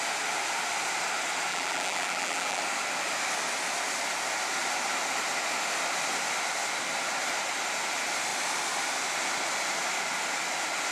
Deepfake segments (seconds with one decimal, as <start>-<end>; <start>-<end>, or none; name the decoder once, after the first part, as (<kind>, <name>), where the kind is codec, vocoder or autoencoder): 1.5-2.6 (vocoder, BigVGAN v2)

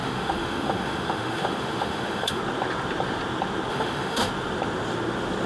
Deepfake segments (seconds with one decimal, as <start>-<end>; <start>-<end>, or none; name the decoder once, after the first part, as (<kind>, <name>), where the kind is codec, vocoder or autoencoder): 0.0-2.4 (autoencoder, DAC-VAE); 3.7-4.3